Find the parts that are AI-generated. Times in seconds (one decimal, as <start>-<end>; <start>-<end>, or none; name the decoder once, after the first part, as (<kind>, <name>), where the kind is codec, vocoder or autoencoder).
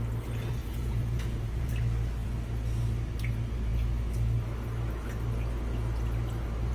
0.6-1.7 (vocoder, Vocos)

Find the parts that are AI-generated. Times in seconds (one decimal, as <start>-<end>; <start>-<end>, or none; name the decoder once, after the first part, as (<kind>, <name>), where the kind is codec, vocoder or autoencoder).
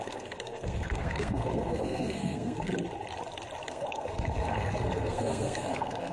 0.0-2.7 (codec, SNAC); 3.7-6.1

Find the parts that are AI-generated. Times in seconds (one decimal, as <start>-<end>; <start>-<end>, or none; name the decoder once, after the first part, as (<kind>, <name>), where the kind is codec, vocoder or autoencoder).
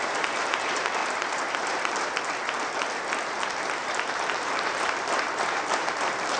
0.0-1.0 (vocoder, BigVGAN v2); 3.7-6.4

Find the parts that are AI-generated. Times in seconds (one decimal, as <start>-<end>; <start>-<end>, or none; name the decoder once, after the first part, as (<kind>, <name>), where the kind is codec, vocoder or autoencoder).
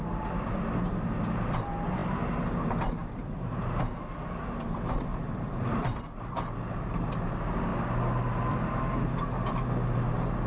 3.0-3.7 (vocoder, BigVGAN v2); 5.1-6.0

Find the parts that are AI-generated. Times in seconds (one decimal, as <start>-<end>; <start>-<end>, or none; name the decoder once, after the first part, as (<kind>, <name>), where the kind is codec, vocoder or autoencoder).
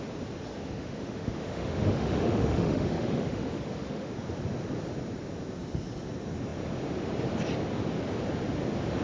0.5-4.1 (autoencoder, DAC-VAE)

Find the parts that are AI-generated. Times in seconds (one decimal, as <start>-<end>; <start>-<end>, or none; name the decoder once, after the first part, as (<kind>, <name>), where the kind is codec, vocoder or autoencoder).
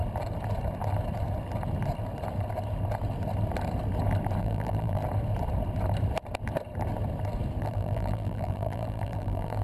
4.4-5.0 (vocoder, BigVGAN v2); 7.6-9.6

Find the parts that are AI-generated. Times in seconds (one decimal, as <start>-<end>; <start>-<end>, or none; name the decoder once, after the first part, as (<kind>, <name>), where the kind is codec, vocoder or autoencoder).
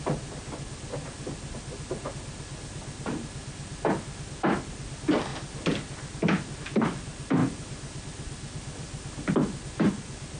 none